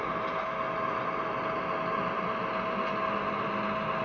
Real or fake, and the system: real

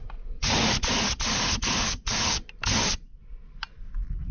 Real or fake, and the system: real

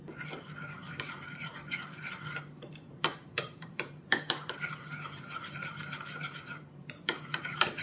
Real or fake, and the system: fake, vocoder, BigVGAN v2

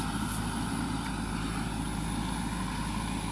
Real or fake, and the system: real